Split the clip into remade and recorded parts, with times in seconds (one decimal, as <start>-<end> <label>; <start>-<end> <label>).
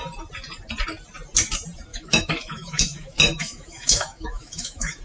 0.0-1.9 recorded; 1.9-5.0 remade